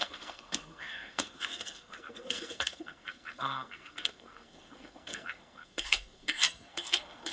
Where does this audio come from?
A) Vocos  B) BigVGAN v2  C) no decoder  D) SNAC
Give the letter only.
D